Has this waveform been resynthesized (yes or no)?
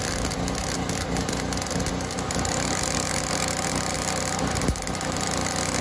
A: no